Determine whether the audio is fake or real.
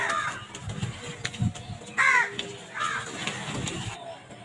real